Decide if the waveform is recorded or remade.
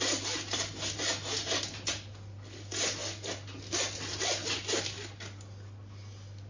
recorded